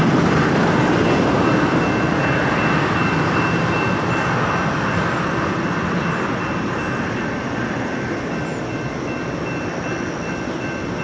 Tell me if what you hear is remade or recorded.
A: recorded